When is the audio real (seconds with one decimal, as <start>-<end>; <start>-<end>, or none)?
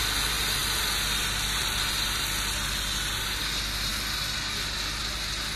0.0-5.6